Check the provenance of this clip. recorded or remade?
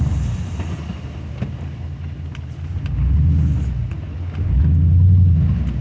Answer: recorded